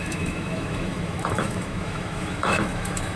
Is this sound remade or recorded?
remade